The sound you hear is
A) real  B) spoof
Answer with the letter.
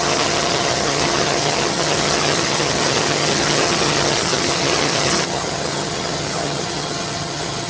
B